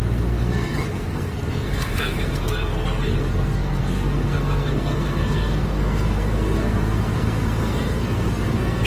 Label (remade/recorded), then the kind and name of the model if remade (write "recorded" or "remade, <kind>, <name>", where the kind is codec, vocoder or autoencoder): remade, codec, SNAC